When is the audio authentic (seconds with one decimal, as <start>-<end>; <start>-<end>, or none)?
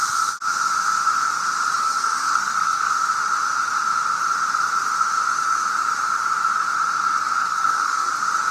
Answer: 0.0-1.8; 2.9-7.4; 8.1-8.5